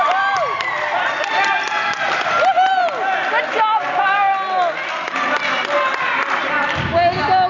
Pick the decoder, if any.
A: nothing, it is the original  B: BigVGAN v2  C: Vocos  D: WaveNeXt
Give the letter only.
A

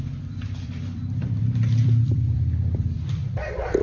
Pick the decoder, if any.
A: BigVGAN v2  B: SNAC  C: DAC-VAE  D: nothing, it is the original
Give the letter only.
A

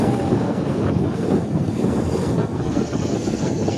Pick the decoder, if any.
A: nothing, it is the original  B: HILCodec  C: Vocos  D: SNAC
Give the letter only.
D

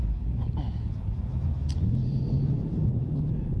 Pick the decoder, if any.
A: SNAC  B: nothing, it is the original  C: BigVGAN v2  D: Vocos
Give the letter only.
B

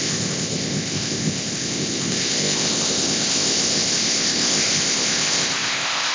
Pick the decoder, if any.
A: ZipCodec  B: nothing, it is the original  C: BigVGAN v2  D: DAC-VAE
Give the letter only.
A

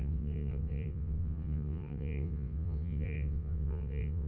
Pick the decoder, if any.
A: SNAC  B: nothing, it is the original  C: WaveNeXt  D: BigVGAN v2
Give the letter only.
C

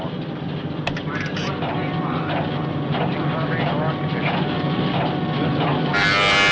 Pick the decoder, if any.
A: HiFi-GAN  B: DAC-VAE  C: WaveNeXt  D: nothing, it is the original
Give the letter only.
D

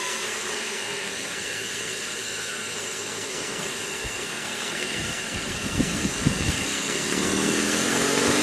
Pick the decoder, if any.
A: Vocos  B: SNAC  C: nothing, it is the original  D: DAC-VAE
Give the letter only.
B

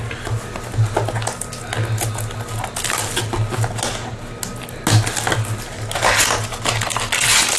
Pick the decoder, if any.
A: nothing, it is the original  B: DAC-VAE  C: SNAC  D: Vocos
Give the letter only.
A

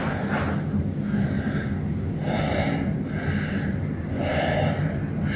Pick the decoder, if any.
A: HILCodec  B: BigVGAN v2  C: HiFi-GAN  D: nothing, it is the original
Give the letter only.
D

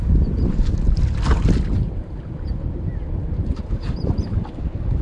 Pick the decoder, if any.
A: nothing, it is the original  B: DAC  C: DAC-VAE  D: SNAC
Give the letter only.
A